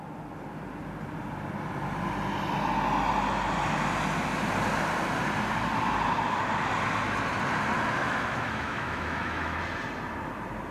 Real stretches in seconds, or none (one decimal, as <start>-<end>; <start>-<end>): 0.0-8.0; 9.6-10.7